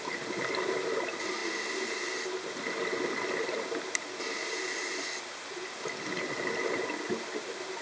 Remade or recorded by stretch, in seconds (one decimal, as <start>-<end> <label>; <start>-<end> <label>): 0.0-7.8 recorded